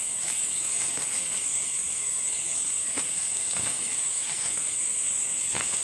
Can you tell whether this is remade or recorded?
remade